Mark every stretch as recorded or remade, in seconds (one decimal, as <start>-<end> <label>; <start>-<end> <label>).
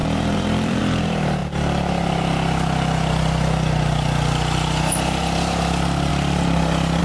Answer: 0.0-1.4 remade; 1.4-4.8 recorded; 4.8-6.1 remade; 6.1-7.0 recorded